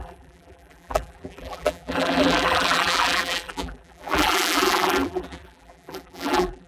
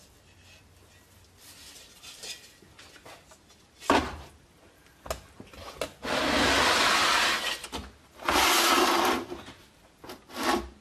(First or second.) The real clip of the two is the second